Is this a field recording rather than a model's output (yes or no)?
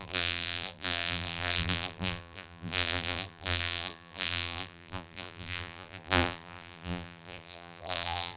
no